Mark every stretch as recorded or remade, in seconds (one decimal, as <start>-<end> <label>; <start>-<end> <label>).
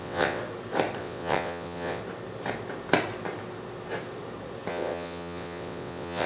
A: 0.0-0.4 remade; 0.4-1.0 recorded; 1.0-2.0 remade; 2.0-4.7 recorded; 4.7-6.3 remade